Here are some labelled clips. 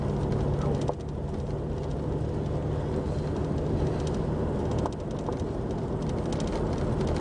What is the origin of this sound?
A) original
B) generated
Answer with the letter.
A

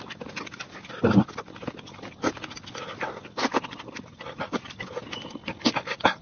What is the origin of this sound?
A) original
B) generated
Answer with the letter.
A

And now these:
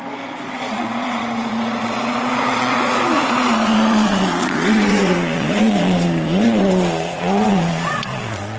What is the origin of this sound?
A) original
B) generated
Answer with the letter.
B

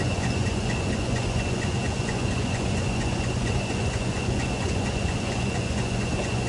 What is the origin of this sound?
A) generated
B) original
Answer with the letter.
A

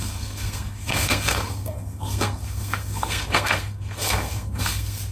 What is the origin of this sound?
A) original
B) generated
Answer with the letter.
B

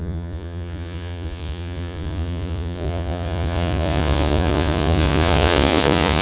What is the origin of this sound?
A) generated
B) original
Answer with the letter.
A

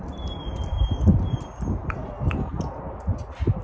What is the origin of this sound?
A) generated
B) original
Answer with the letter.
B